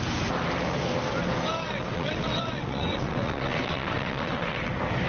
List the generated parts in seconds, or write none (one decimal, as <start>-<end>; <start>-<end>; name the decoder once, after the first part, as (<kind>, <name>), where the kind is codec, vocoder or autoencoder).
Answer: 1.5-4.6 (vocoder, WaveNeXt)